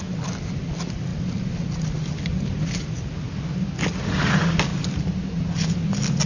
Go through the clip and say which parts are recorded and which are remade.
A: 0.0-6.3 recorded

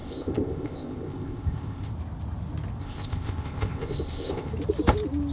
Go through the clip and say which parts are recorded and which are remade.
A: 0.0-1.9 remade; 1.9-2.8 recorded; 2.8-4.5 remade; 4.5-5.3 recorded

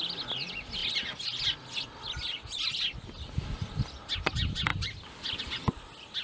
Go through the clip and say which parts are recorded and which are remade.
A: 0.0-6.2 recorded

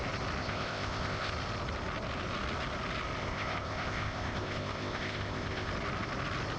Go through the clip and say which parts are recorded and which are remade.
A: 0.0-0.4 recorded; 0.4-1.3 remade; 1.3-3.2 recorded; 3.2-5.7 remade; 5.7-6.6 recorded

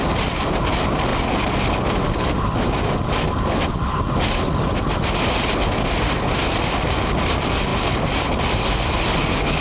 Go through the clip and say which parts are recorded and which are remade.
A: 0.0-9.6 recorded

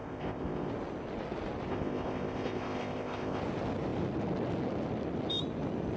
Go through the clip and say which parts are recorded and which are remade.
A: 0.0-0.7 remade; 0.7-1.7 recorded; 1.7-3.4 remade; 3.4-6.0 recorded

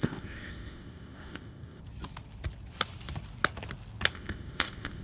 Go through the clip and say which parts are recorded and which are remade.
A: 0.0-1.8 remade; 1.8-4.1 recorded; 4.1-5.0 remade

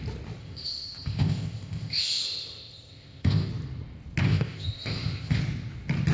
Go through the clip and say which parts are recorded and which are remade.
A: 0.0-0.4 recorded; 0.4-3.5 remade; 3.5-4.2 recorded; 4.2-5.4 remade; 5.4-6.1 recorded